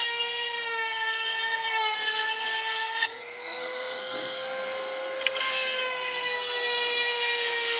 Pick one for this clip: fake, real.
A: fake